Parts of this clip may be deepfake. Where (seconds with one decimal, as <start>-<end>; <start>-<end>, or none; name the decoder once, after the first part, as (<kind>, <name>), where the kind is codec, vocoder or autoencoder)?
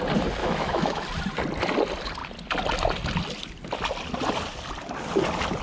0.4-1.0 (autoencoder, DAC-VAE)